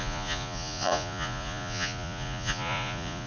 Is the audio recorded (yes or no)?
no